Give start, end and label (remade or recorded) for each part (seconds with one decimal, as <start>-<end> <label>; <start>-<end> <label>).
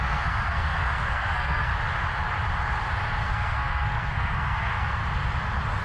0.0-1.7 remade; 1.7-3.2 recorded; 3.2-5.0 remade; 5.0-5.8 recorded